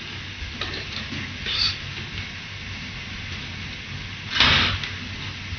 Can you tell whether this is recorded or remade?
recorded